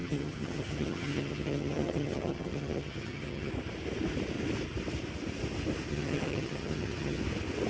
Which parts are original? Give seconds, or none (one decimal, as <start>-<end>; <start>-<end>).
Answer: 3.5-5.9; 7.2-7.7